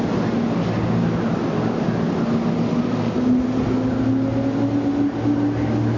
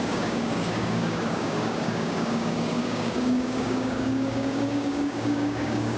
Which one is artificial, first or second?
second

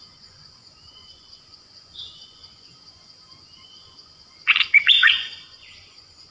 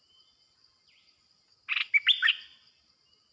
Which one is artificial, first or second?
first